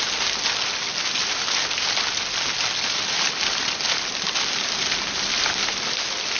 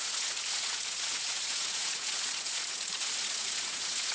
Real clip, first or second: first